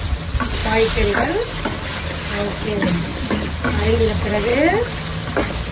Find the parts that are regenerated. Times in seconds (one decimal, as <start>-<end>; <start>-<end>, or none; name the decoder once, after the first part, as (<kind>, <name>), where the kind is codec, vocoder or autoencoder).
none